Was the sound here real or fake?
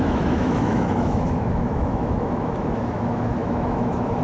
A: fake